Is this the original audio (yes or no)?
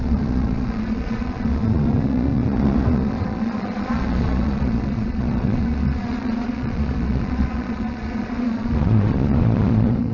no